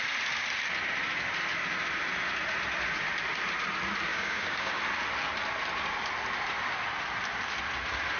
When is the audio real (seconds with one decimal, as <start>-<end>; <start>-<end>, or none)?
0.0-4.1; 4.8-8.2